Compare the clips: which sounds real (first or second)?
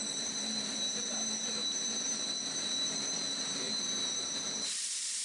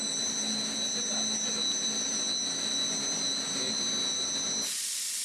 second